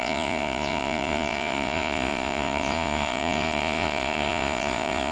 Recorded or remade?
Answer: remade